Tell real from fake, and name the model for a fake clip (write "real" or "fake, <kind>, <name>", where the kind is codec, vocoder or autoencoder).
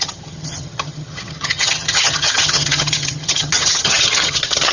fake, vocoder, HiFi-GAN